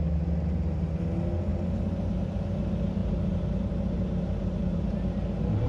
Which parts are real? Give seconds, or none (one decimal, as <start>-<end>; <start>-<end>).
0.0-3.0; 4.9-5.7